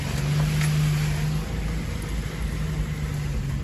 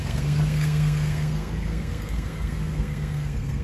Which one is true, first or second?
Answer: first